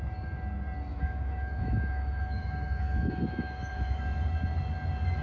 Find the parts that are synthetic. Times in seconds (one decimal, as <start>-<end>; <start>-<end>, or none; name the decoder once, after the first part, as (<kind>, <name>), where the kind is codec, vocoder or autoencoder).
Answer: 0.9-4.0 (autoencoder, DAC-VAE)